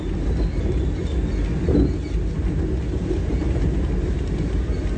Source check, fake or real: real